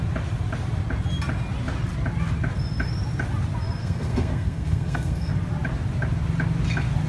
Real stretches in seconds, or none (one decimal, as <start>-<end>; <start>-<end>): 0.0-3.8; 5.3-7.1

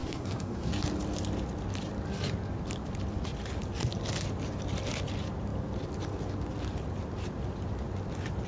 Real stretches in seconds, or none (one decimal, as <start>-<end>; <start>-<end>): 0.7-8.5

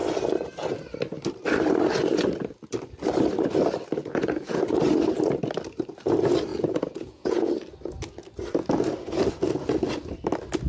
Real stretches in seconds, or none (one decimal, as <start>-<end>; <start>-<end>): 0.0-4.0; 4.6-6.5; 7.5-10.7

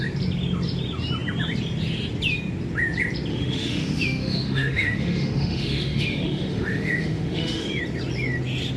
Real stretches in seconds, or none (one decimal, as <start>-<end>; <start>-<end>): 0.0-3.3; 7.8-8.8

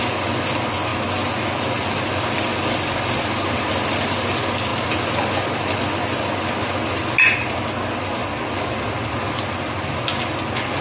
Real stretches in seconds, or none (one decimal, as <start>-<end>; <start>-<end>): 0.0-10.8

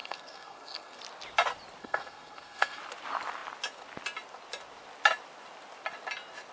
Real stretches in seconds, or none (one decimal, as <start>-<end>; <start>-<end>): 1.0-1.8; 2.8-6.5

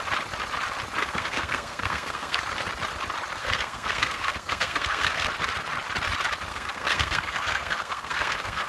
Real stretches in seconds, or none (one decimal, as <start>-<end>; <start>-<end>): 0.0-1.0; 2.4-3.4; 5.3-6.5

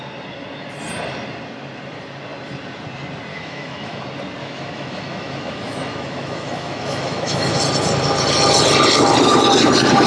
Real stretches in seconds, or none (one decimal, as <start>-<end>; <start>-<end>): 0.0-3.3; 4.0-4.4; 7.6-10.1